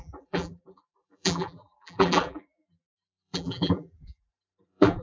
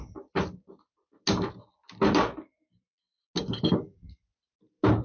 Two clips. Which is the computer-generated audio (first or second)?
first